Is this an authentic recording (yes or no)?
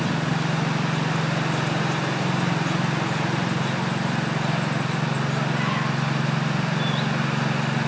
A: yes